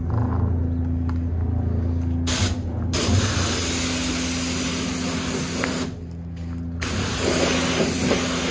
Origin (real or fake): real